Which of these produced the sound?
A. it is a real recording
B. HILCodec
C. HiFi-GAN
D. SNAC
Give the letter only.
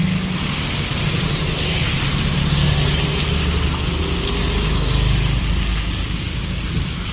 A